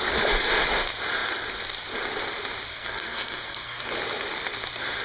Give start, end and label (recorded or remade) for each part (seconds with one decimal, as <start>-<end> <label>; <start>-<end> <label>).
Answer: 0.0-2.7 recorded; 2.7-3.9 remade; 3.9-5.0 recorded